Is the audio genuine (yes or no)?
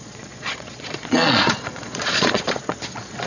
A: no